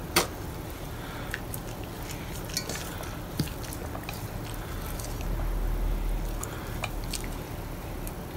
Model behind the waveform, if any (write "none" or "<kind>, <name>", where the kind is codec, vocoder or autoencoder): none